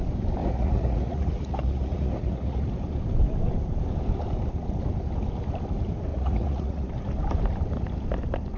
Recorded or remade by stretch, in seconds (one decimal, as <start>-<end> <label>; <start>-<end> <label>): 0.0-0.4 recorded; 0.4-2.6 remade; 2.6-6.1 recorded; 6.1-6.9 remade; 6.9-8.6 recorded